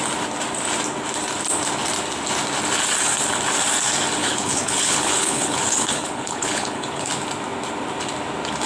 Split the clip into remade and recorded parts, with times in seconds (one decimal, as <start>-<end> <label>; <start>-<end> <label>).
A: 0.0-4.2 recorded; 4.2-7.1 remade; 7.1-8.7 recorded